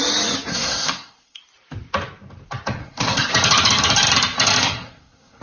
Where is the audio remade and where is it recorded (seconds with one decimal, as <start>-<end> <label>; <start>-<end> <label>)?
0.0-0.5 recorded; 0.5-1.4 remade; 1.4-2.8 recorded; 2.8-3.3 remade; 3.3-4.6 recorded; 4.6-5.4 remade